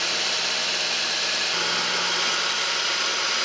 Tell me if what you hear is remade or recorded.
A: recorded